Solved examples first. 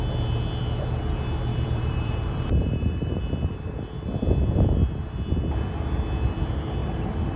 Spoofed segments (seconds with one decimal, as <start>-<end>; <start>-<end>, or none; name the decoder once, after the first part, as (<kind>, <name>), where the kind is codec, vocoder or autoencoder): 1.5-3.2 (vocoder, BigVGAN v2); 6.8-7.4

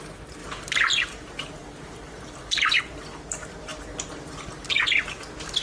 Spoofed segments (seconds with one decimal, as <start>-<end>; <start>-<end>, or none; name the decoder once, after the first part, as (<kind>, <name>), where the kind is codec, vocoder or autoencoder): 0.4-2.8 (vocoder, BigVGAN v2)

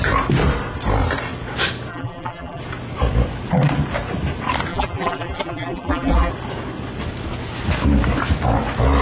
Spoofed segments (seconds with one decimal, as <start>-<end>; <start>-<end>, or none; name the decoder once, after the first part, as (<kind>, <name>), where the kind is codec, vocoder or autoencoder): 1.9-2.6 (vocoder, BigVGAN v2); 4.7-6.3

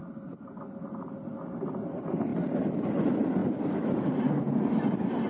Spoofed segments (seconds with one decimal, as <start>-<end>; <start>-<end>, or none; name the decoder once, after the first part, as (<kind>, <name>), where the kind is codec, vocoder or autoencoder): 3.4-4.2 (vocoder, BigVGAN v2)

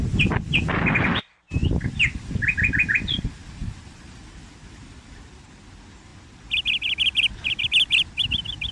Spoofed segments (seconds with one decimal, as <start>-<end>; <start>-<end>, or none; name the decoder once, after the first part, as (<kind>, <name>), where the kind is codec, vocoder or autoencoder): 1.6-2.4 (vocoder, BigVGAN v2); 3.6-5.5

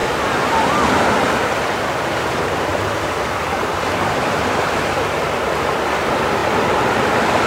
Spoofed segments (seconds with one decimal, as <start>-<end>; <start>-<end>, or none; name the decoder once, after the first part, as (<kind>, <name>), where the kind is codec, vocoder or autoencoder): 0.0-2.7 (vocoder, BigVGAN v2); 3.3-7.5

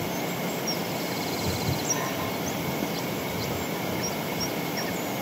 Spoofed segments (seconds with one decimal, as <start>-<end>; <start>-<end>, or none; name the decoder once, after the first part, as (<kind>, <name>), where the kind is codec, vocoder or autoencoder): none